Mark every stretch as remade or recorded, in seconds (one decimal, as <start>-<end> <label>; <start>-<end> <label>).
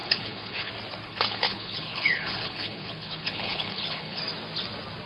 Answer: 0.0-0.7 remade; 0.7-1.1 recorded; 1.1-4.2 remade; 4.2-5.1 recorded